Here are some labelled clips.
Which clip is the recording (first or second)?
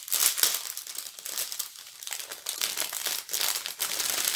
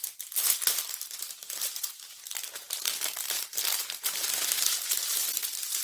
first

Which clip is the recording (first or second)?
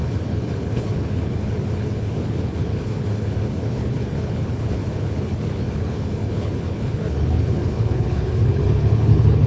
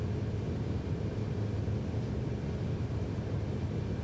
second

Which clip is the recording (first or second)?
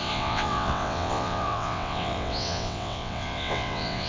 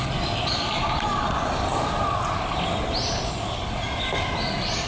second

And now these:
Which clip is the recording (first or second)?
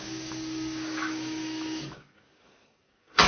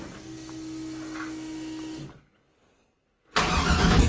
second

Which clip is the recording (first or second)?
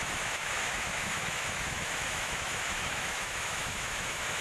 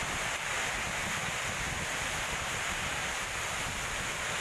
second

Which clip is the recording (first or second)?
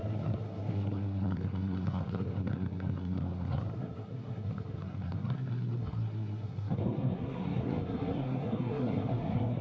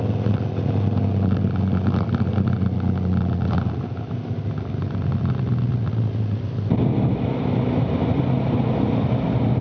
second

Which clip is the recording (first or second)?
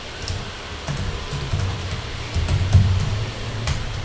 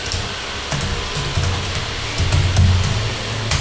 second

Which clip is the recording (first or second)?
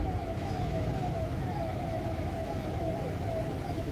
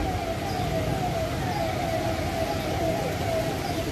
second